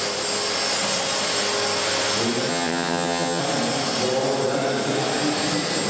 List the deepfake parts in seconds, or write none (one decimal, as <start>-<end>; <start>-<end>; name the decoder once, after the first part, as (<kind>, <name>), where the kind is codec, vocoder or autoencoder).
2.5-3.4 (vocoder, HiFi-GAN)